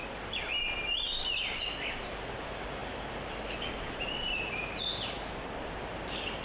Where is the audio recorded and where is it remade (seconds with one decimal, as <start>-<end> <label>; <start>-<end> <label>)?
0.0-2.2 remade; 2.2-6.4 recorded